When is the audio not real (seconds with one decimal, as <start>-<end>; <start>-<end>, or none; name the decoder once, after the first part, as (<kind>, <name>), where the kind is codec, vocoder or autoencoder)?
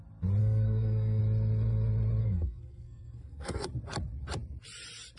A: 0.4-1.2 (codec, SNAC); 2.2-3.7